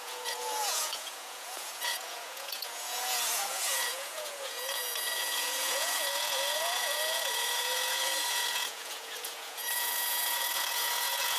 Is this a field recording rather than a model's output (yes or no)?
no